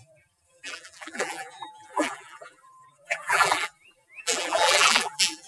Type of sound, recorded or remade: remade